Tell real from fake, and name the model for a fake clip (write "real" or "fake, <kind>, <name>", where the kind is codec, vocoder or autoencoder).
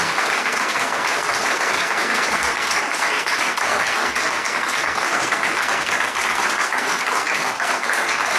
fake, codec, SNAC